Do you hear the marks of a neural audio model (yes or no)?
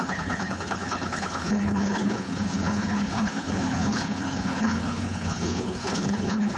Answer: yes